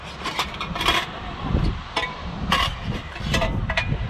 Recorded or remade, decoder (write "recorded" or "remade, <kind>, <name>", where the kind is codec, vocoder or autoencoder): remade, vocoder, BigVGAN v2